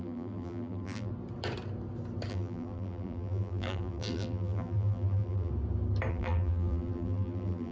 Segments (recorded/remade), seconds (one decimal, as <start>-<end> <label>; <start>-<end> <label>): 0.0-1.1 remade; 1.1-2.3 recorded; 2.3-5.5 remade; 5.5-6.1 recorded; 6.1-7.7 remade